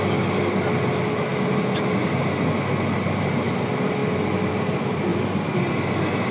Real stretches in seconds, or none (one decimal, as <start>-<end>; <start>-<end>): 0.0-6.3